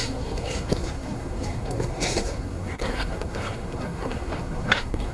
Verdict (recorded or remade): remade